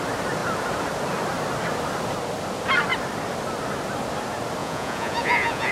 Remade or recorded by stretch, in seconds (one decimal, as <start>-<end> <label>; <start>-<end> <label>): 0.0-4.6 recorded; 4.6-5.7 remade